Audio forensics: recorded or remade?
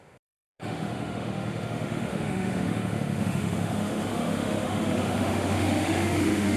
remade